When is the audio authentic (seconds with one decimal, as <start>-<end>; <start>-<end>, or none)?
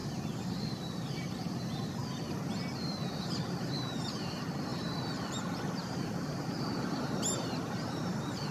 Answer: 1.5-4.7